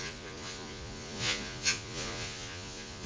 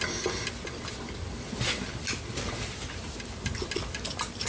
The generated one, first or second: first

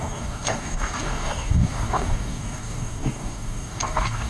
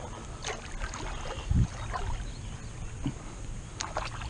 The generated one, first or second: first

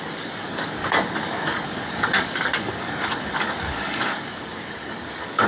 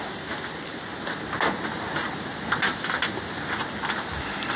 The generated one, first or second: first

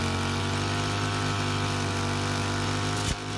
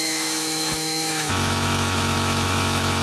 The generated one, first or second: second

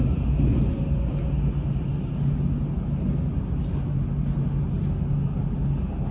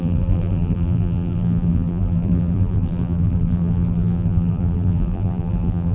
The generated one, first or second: second